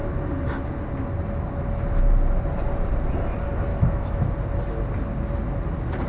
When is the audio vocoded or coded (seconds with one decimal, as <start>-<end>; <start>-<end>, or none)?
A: 3.7-4.3